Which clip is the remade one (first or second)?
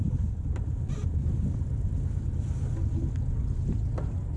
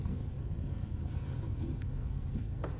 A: second